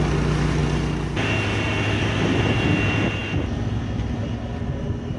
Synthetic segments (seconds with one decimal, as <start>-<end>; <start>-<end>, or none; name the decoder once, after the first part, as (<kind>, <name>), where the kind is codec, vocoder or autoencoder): none